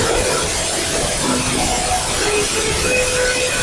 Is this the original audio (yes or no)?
yes